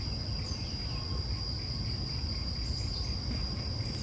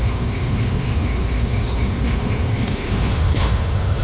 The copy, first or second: second